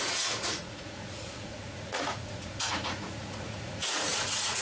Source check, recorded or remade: remade